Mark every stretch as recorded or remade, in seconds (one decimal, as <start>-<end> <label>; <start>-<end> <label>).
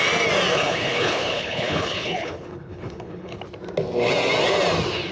0.0-0.5 recorded; 0.5-3.4 remade; 3.4-5.1 recorded